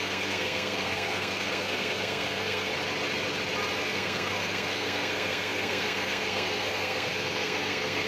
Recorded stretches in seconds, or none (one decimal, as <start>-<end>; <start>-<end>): 2.7-3.8